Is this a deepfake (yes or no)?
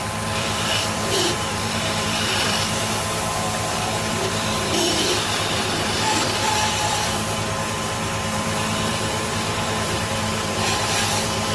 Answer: yes